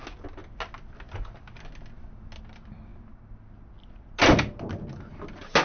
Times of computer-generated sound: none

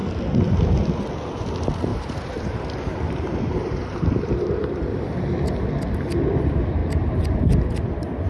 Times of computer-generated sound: 1.9-5.1 (vocoder, BigVGAN v2)

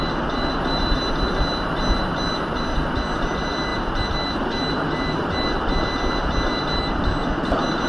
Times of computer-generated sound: none

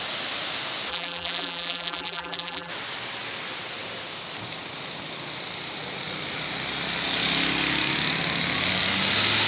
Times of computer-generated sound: 0.9-2.7 (vocoder, BigVGAN v2)